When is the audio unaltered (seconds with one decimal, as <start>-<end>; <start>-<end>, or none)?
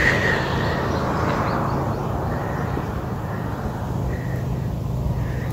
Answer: 0.0-5.5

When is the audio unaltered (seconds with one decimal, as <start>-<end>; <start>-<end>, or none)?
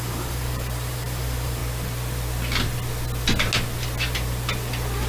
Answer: 1.6-5.1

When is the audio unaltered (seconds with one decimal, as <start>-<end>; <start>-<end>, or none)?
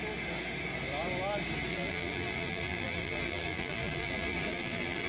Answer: 0.0-1.7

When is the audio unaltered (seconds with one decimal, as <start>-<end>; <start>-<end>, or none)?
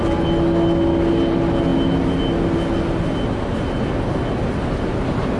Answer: 0.0-5.4